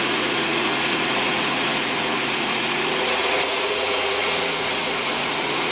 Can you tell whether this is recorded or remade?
remade